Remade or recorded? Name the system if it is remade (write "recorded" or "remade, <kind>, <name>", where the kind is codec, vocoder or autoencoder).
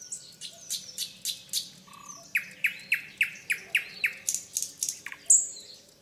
recorded